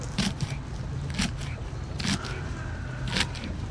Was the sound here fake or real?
real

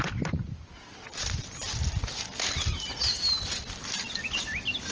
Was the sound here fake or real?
real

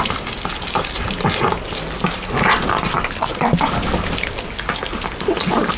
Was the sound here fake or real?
real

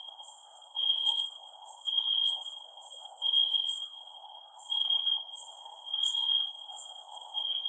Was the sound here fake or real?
fake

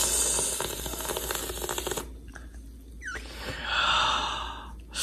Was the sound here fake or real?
real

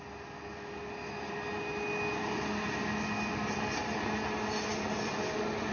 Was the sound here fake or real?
real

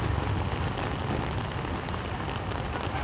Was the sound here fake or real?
real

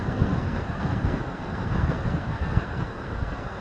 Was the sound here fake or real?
fake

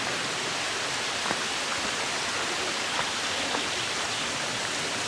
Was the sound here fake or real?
real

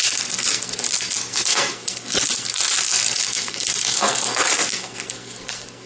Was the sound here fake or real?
fake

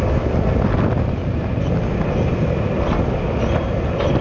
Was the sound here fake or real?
real